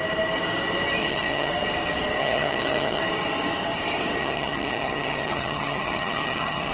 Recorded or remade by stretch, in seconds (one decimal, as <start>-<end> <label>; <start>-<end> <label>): 0.0-1.0 recorded; 1.0-1.5 remade; 1.5-2.2 recorded; 2.2-3.0 remade; 3.0-4.2 recorded; 4.2-6.7 remade